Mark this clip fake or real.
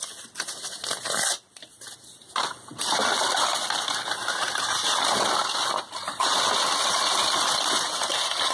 real